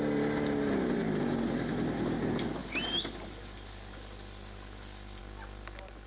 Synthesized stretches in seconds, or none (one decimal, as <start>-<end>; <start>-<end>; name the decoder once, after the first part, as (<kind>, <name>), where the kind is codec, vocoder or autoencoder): none